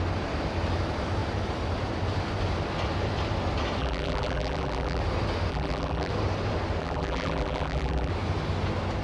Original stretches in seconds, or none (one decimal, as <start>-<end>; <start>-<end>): 0.0-3.8; 5.0-5.5; 6.1-6.8; 8.1-9.0